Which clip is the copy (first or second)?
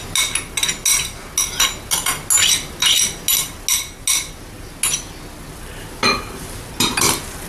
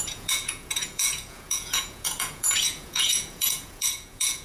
second